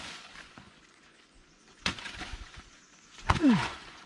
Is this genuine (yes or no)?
no